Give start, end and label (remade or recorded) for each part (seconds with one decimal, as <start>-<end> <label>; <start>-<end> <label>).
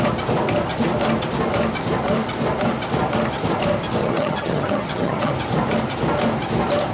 0.0-4.0 recorded; 4.0-5.3 remade; 5.3-6.9 recorded